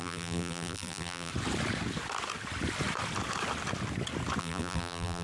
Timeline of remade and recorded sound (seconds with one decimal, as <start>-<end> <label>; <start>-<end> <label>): 0.0-1.3 remade; 1.3-4.4 recorded; 4.4-5.2 remade